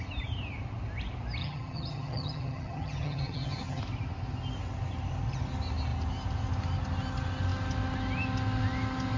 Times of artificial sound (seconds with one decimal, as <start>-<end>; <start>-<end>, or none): 1.4-3.8